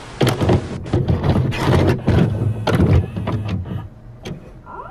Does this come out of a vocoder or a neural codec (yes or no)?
no